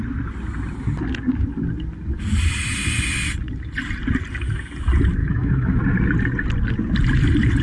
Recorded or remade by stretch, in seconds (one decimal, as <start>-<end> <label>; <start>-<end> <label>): 0.0-5.2 recorded; 5.2-5.8 remade; 5.8-7.6 recorded